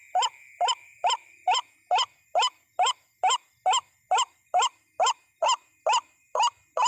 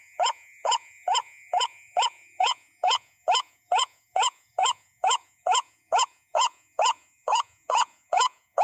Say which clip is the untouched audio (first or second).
first